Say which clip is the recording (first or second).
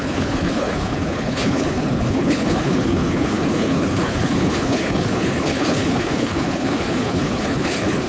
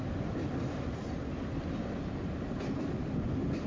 second